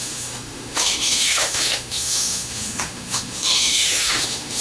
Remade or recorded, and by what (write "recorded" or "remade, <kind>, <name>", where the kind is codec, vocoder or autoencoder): remade, autoencoder, DAC-VAE